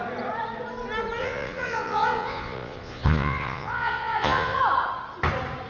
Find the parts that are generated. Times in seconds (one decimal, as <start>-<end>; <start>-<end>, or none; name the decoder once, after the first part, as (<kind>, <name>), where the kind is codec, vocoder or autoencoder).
1.2-4.6 (vocoder, Vocos)

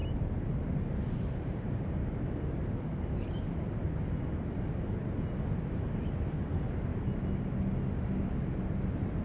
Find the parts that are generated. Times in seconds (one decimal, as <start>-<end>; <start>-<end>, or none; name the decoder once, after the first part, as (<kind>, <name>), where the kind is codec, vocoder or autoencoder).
0.0-4.4 (vocoder, BigVGAN v2)